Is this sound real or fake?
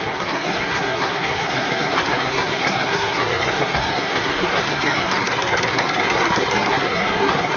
fake